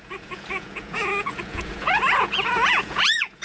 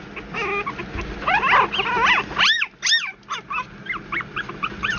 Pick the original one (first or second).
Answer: second